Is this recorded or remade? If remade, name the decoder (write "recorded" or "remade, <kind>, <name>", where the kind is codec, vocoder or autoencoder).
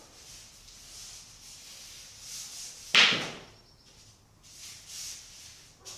recorded